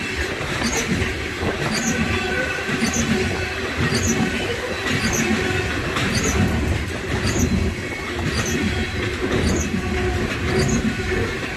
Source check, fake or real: real